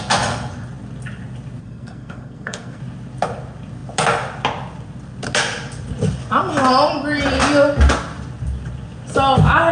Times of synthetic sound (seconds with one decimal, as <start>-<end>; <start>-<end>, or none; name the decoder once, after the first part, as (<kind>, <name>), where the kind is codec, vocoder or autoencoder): 1.6-2.8 (codec, SNAC)